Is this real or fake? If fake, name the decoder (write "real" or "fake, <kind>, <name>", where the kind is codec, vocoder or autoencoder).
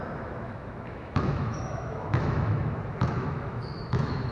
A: fake, autoencoder, DAC-VAE